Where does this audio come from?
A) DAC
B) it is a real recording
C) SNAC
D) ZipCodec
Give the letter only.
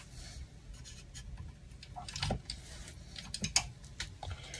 B